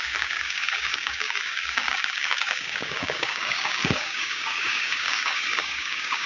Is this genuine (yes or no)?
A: no